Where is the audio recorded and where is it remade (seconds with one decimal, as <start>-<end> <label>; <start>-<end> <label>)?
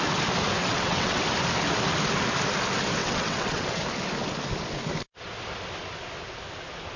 0.0-0.6 recorded; 0.6-1.2 remade; 1.2-3.0 recorded; 3.0-3.8 remade; 3.8-7.0 recorded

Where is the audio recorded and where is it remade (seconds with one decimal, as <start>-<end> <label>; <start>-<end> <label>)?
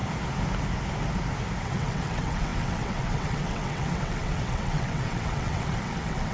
0.0-1.6 recorded; 1.6-6.3 remade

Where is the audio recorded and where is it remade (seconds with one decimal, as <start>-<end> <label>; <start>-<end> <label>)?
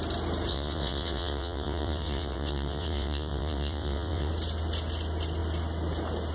0.0-0.5 recorded; 0.5-4.3 remade; 4.3-6.3 recorded